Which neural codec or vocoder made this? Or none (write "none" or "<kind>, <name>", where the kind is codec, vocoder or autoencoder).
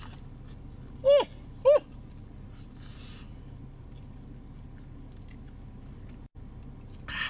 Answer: none